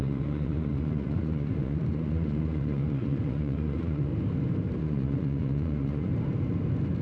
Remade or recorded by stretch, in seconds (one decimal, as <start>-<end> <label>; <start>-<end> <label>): 0.0-4.1 remade; 4.1-4.8 recorded; 4.8-6.1 remade; 6.1-7.0 recorded